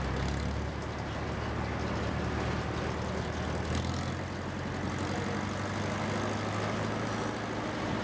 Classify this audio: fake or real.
real